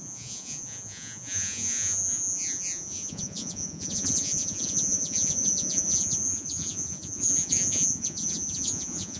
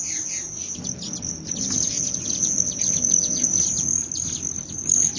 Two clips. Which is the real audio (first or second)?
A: second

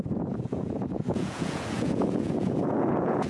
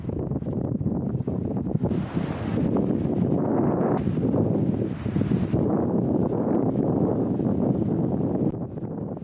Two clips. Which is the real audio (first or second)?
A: second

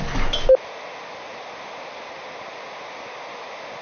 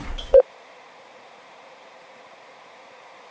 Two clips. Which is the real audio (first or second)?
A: first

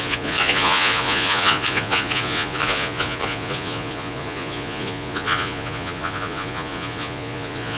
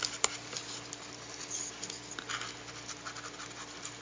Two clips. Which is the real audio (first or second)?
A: second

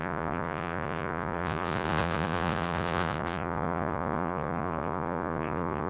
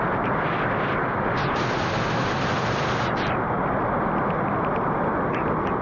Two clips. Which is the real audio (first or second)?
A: second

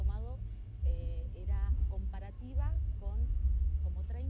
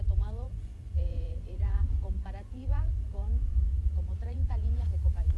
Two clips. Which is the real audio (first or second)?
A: first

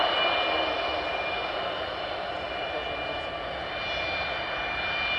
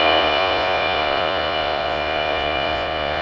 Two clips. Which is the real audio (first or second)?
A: first